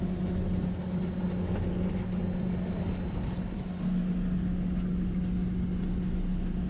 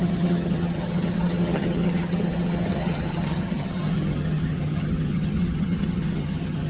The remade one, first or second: second